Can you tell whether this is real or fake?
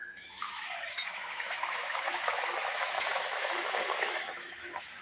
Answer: fake